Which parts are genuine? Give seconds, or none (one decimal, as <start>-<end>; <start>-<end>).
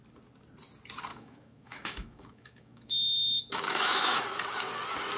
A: 0.0-1.1; 4.2-5.2